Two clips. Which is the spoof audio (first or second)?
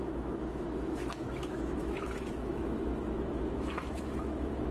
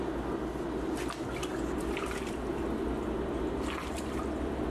first